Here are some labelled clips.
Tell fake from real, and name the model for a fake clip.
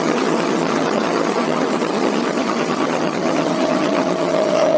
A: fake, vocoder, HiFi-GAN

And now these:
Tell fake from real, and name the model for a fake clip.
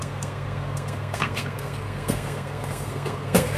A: fake, codec, SNAC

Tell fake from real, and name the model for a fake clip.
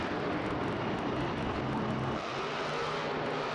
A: real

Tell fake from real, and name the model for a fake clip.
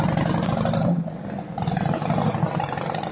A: real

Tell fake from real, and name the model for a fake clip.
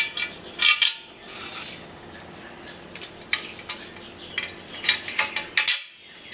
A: real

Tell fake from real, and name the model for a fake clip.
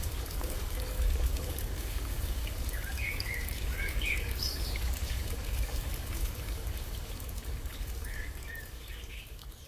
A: fake, codec, DAC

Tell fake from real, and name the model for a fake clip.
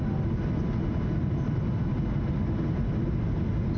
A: real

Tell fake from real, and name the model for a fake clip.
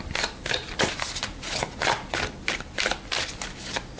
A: fake, vocoder, BigVGAN v2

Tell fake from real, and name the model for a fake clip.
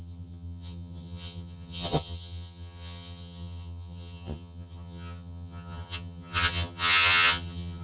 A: fake, vocoder, HiFi-GAN